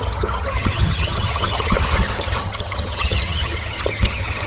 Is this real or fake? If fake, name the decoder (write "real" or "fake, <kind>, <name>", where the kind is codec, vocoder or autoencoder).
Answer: fake, vocoder, HiFi-GAN